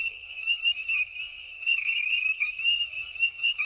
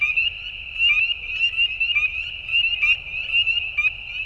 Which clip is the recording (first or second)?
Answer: second